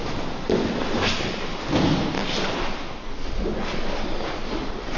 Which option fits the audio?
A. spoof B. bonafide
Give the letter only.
B